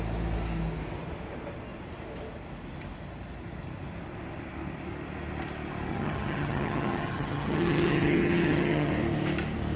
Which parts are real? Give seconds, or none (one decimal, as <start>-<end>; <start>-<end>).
0.0-5.9; 8.9-9.8